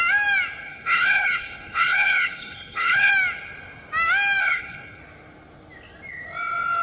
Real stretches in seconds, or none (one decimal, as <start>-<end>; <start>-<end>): 0.0-0.6; 3.1-4.4; 5.0-6.8